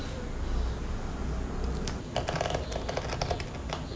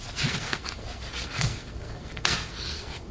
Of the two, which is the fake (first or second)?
second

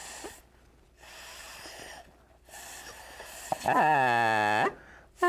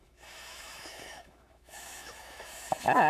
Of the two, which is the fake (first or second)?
second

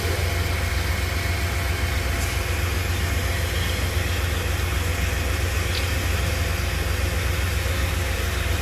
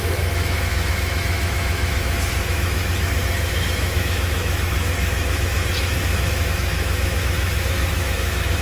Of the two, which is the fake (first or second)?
second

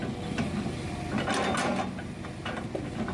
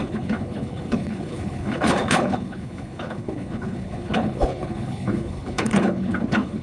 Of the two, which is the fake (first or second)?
second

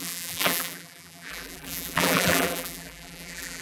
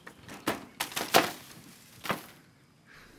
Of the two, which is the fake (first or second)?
first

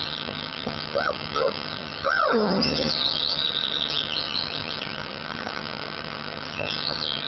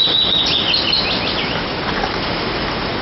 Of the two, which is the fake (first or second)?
first